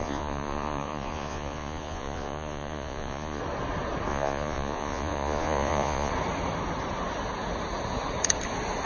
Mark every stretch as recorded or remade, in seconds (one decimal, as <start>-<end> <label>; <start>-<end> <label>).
0.0-3.4 remade; 3.4-4.1 recorded; 4.1-6.1 remade; 6.1-8.9 recorded